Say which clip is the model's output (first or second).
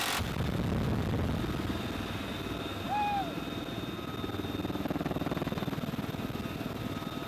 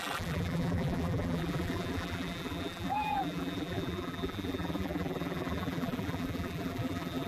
second